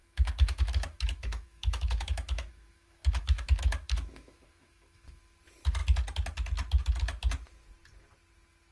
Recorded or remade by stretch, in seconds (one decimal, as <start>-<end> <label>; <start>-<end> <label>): 0.0-5.2 remade; 5.2-8.7 recorded